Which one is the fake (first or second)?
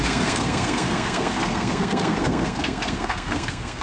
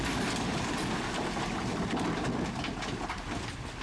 first